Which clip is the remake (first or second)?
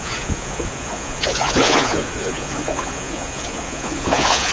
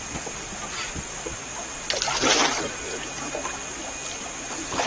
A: first